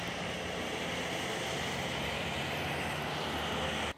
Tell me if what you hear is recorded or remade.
recorded